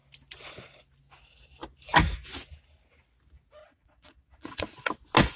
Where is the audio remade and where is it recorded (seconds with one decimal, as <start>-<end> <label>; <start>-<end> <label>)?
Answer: 0.0-3.6 recorded; 3.6-4.9 remade; 4.9-5.4 recorded